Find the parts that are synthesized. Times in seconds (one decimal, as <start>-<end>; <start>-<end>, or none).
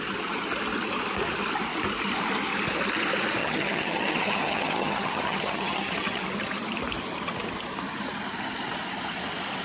3.4-6.2